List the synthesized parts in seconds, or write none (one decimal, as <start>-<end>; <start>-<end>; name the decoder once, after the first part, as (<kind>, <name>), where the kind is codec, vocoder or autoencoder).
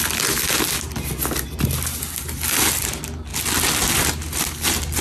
none